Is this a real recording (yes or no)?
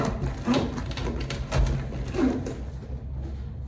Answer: yes